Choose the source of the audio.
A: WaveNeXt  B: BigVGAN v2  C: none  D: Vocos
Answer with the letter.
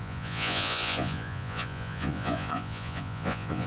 D